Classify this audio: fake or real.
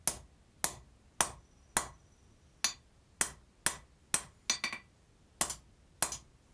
real